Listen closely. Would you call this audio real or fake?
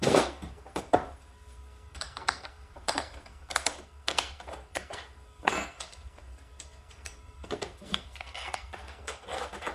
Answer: fake